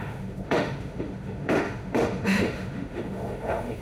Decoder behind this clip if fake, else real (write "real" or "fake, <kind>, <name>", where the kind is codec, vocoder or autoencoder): fake, autoencoder, DAC-VAE